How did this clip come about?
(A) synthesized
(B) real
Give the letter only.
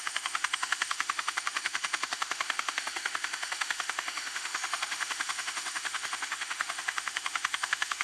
A